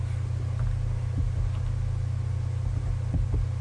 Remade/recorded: recorded